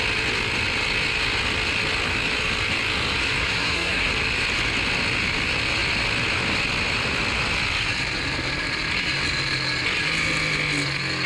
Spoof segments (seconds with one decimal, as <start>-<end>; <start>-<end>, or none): 3.4-4.1